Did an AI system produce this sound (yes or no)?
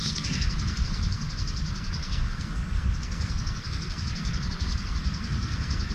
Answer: yes